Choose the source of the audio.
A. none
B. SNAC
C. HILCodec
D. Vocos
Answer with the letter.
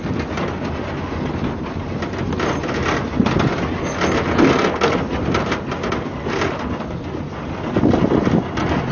A